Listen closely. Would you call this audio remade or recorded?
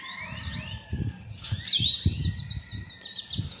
recorded